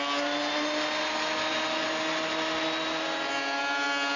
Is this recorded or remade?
recorded